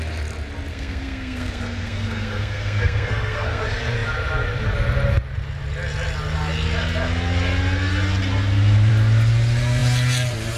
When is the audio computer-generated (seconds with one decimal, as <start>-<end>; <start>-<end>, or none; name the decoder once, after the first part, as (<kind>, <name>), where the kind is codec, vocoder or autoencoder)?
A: 0.7-3.6 (codec, SNAC)